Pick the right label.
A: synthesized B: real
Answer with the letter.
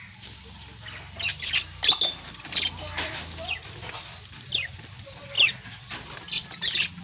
B